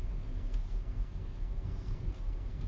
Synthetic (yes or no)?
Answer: yes